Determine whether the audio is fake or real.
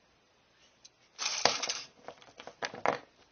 real